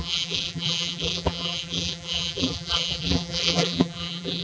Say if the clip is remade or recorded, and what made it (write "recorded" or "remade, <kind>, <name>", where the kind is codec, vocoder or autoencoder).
remade, vocoder, BigVGAN v2